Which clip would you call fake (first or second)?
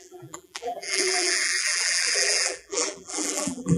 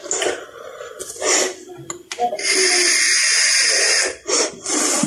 first